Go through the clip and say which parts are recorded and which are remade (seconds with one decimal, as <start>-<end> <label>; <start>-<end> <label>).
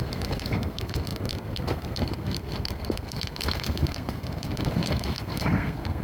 0.0-6.0 remade